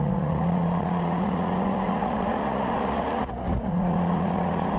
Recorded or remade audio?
remade